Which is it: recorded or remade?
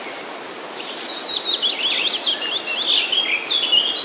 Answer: recorded